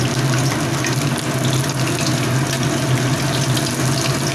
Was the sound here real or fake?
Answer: real